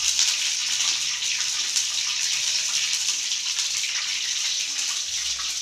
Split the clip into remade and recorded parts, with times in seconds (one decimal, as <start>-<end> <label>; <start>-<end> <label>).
0.0-2.1 recorded; 2.1-3.6 remade; 3.6-4.1 recorded; 4.1-4.7 remade; 4.7-5.6 recorded